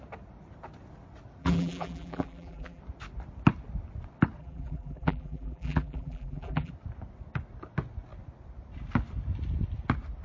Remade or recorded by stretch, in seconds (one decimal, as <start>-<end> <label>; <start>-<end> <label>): 0.0-1.4 recorded; 1.4-2.8 remade; 2.8-4.4 recorded; 4.4-6.7 remade; 6.7-10.2 recorded